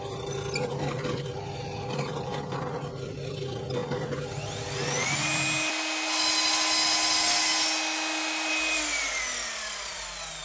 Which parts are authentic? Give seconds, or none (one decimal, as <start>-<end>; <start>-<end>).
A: 3.8-8.5